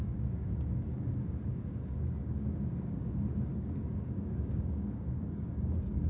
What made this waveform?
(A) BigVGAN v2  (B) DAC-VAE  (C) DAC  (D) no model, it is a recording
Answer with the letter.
C